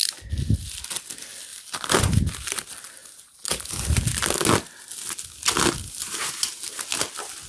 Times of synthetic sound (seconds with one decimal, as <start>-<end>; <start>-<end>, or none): 1.5-2.2; 3.0-3.7; 5.8-6.8

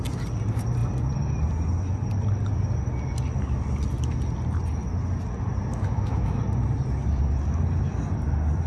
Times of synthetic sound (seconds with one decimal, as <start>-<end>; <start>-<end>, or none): 5.7-6.4

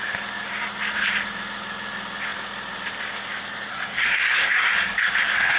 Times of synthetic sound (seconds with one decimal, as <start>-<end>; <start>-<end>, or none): 3.7-4.5